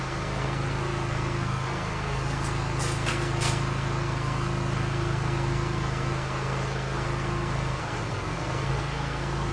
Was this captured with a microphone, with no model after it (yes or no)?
no